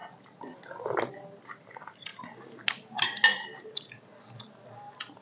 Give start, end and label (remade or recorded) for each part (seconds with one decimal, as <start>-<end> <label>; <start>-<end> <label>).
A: 0.0-1.7 recorded; 1.7-2.1 remade; 2.1-5.2 recorded